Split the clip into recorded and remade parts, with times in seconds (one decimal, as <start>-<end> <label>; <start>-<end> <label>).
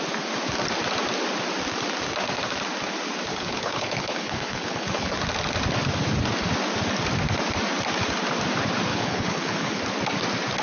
0.0-3.3 recorded; 3.3-5.1 remade; 5.1-8.9 recorded; 8.9-9.8 remade; 9.8-10.6 recorded